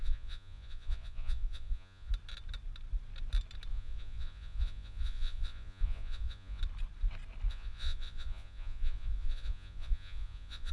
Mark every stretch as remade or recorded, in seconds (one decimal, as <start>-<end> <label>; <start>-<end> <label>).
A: 0.0-2.1 remade; 2.1-3.7 recorded; 3.7-6.6 remade; 6.6-7.5 recorded; 7.5-10.7 remade